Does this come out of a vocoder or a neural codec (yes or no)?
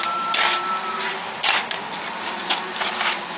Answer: no